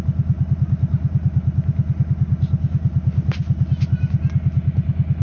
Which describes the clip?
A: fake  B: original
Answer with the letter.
B